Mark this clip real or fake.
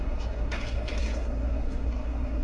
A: fake